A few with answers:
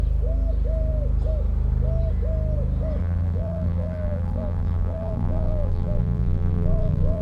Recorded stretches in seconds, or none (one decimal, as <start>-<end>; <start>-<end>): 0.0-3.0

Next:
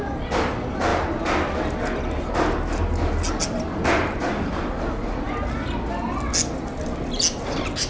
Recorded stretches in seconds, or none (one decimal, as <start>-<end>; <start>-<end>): 0.0-7.9

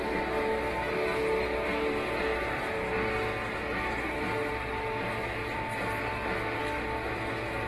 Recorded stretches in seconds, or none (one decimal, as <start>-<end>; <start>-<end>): 0.0-5.4; 6.1-7.7

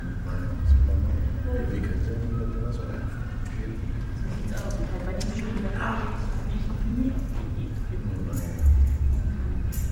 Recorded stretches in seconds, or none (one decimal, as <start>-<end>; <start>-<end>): none

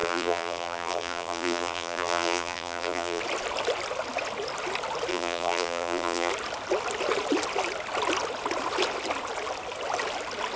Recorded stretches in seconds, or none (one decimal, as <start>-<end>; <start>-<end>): 3.2-5.1; 6.3-10.6

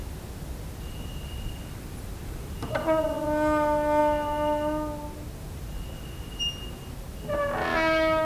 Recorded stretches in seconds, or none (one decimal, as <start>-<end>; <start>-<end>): 0.0-8.2

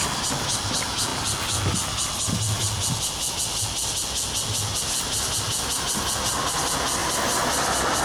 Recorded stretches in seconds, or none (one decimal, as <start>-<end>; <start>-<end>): 0.0-7.0